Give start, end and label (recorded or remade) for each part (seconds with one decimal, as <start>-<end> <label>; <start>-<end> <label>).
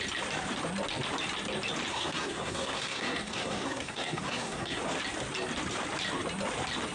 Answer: 0.0-1.9 recorded; 1.9-4.8 remade; 4.8-6.9 recorded